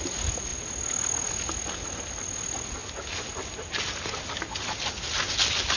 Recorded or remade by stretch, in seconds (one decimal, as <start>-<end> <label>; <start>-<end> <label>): 0.0-5.8 recorded